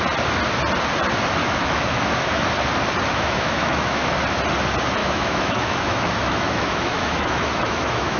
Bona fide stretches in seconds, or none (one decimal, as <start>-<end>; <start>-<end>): 0.0-1.4; 2.4-3.1; 4.1-5.0